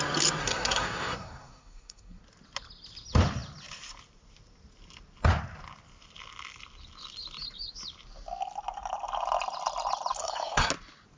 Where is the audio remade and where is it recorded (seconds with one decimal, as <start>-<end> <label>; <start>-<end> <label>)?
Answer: 0.0-0.4 recorded; 0.4-2.2 remade; 2.2-10.2 recorded; 10.2-10.7 remade; 10.7-11.2 recorded